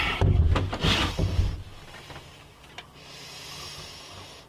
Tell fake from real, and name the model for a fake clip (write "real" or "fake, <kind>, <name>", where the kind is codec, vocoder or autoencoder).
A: real